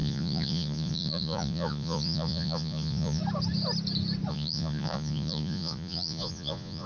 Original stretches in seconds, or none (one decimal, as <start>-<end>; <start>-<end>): 3.2-4.3